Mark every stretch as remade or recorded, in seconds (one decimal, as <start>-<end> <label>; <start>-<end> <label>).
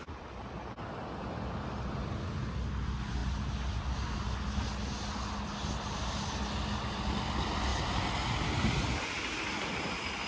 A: 0.0-10.3 recorded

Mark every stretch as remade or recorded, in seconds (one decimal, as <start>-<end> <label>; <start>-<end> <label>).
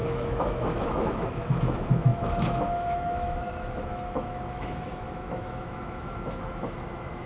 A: 0.0-7.3 remade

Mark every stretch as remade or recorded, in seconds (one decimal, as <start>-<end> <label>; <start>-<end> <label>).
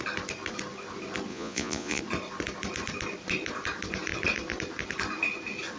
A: 0.0-1.3 recorded; 1.3-2.0 remade; 2.0-5.8 recorded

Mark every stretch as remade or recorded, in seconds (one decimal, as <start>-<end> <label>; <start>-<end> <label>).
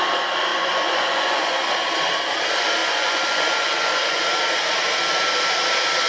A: 0.0-0.5 recorded; 0.5-1.7 remade; 1.7-2.8 recorded; 2.8-4.2 remade; 4.2-6.1 recorded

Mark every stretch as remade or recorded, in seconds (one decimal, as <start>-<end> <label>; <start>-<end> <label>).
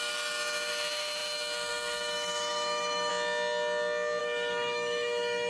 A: 0.0-3.1 remade; 3.1-4.2 recorded; 4.2-5.5 remade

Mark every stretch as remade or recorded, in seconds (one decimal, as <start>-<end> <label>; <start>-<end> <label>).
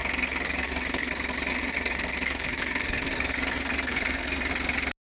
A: 0.0-1.1 remade; 1.1-1.5 recorded; 1.5-4.5 remade; 4.5-5.1 recorded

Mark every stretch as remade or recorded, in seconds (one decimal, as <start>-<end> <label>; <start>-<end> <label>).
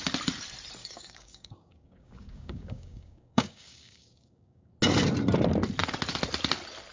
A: 0.0-0.8 recorded; 0.8-4.7 remade; 4.7-6.9 recorded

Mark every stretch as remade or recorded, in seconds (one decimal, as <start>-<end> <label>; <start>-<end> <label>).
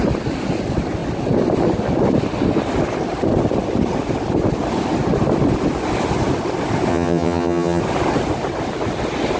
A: 0.0-6.9 recorded; 6.9-7.8 remade; 7.8-9.4 recorded